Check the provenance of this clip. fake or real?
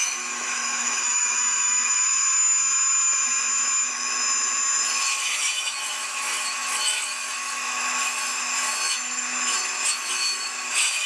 fake